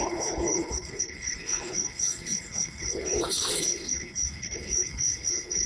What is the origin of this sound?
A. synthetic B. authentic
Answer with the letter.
A